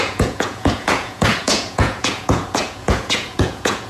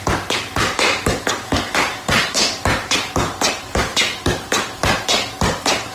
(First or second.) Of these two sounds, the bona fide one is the second